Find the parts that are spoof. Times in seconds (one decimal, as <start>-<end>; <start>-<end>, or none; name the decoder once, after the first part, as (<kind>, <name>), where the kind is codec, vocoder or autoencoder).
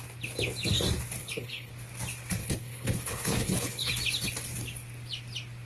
1.2-1.7 (codec, HILCodec); 2.4-3.9